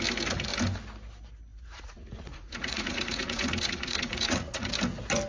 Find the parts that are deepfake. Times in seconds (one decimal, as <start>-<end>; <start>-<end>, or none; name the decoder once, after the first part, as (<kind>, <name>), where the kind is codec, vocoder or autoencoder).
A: 1.5-4.7 (vocoder, Vocos)

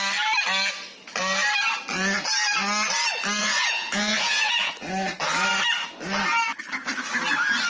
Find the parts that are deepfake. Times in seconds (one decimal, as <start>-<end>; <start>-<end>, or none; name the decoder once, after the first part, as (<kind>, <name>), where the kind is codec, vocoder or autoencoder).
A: 3.4-4.7 (vocoder, Vocos)

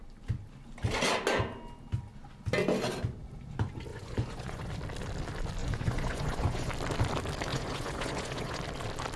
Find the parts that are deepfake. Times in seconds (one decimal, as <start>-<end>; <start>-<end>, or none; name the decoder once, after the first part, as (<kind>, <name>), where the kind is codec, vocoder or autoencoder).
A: 3.9-4.7 (vocoder, Vocos); 5.6-6.7; 7.5-8.6

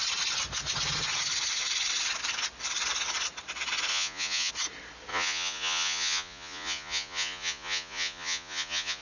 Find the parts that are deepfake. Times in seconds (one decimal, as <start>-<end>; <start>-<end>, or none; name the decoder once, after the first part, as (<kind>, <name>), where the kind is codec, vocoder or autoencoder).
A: 3.9-4.5 (vocoder, Vocos); 5.1-9.0